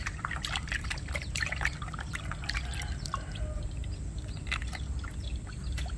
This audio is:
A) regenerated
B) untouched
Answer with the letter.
A